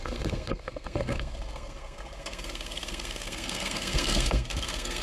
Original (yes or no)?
no